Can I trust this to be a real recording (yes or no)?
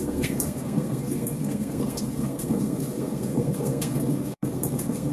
no